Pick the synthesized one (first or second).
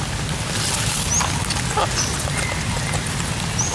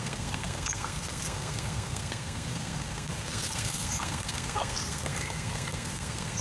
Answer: second